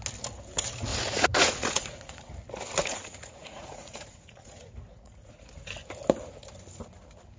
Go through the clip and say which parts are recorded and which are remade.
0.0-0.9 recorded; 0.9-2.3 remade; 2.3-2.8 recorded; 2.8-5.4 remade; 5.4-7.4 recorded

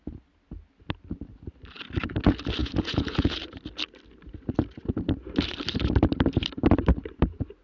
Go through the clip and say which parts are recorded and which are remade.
0.0-2.6 recorded; 2.6-3.4 remade; 3.4-7.6 recorded